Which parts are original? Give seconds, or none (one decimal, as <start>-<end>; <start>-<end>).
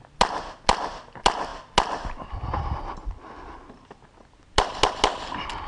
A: 0.0-5.7